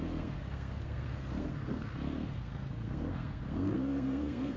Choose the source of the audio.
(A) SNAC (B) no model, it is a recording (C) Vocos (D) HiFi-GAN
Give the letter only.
A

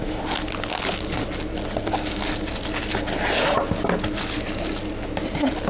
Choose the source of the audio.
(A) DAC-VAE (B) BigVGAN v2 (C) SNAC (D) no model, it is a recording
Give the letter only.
D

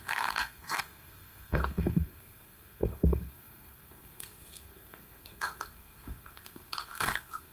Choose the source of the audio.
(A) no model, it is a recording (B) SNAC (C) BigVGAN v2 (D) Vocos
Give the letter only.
B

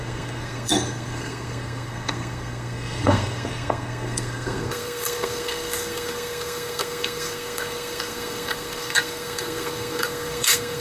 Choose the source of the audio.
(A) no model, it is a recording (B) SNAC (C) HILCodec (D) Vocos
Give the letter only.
B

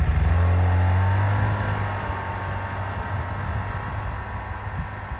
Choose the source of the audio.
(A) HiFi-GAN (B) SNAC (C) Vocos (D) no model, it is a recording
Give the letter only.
D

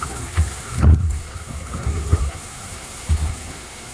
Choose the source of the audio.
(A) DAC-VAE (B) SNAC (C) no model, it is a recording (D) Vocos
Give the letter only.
B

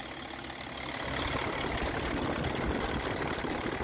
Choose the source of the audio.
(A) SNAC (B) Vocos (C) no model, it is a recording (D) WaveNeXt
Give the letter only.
C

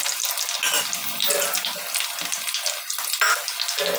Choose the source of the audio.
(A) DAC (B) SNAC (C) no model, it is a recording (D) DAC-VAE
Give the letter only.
C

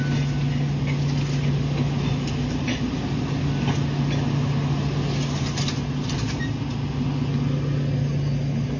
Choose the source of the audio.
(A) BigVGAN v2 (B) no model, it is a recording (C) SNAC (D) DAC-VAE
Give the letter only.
B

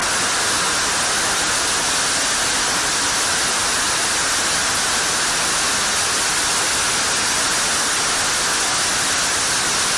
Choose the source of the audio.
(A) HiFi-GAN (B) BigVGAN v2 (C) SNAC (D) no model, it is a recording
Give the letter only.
D